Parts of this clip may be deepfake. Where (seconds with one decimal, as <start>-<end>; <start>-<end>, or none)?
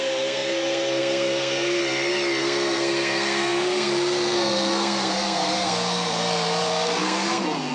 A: 0.0-1.8; 2.4-7.7